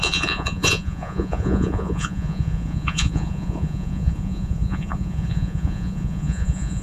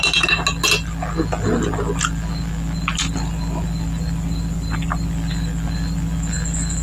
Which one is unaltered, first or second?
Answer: second